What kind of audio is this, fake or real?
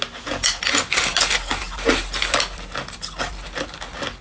real